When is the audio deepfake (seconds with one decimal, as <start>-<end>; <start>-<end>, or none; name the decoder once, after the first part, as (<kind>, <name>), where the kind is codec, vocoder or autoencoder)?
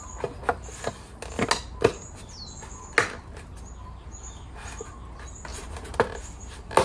none